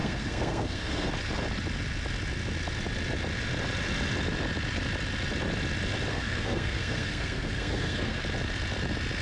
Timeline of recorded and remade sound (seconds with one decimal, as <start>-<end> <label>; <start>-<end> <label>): 0.0-1.1 remade; 1.1-6.1 recorded; 6.1-8.2 remade; 8.2-9.2 recorded

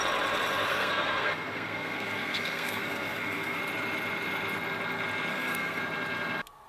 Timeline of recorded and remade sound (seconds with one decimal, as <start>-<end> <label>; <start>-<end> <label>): 0.0-0.7 recorded; 0.7-3.6 remade; 3.6-5.3 recorded; 5.3-5.8 remade; 5.8-6.7 recorded

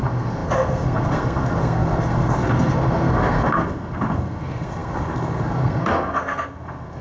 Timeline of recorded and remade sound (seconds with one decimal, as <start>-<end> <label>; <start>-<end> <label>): 0.0-7.0 remade

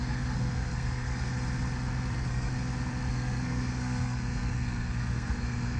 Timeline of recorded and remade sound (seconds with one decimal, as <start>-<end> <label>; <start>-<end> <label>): 0.0-1.3 remade; 1.3-2.1 recorded; 2.1-2.5 remade; 2.5-3.1 recorded; 3.1-5.8 remade

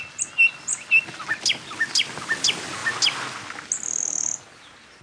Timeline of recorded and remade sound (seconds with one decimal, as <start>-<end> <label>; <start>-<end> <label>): 0.0-5.0 recorded

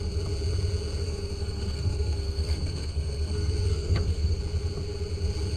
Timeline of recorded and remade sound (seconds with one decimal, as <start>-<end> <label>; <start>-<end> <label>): 0.0-1.0 recorded; 1.0-4.4 remade; 4.4-5.6 recorded

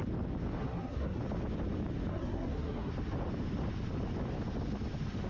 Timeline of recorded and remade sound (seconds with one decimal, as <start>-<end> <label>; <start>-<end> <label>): 0.0-0.6 recorded; 0.6-1.2 remade; 1.2-2.1 recorded; 2.1-2.9 remade; 2.9-5.3 recorded

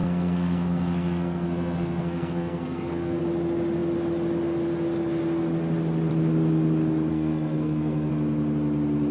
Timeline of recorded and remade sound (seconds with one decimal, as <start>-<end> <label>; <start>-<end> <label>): 0.0-3.2 remade; 3.2-7.1 recorded; 7.1-8.1 remade; 8.1-9.1 recorded